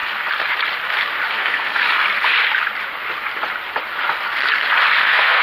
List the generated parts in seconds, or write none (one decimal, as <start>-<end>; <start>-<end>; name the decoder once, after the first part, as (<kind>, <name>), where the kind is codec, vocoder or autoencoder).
1.3-1.8 (codec, SNAC); 5.0-5.4